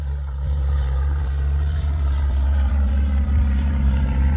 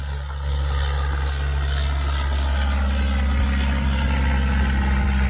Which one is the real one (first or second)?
second